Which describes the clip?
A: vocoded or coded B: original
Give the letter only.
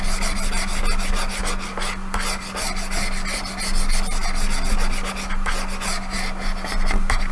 B